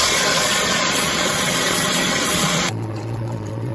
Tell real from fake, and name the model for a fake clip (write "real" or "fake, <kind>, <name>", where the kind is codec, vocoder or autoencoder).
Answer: fake, vocoder, Vocos